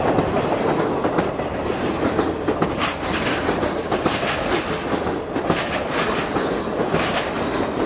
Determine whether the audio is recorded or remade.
recorded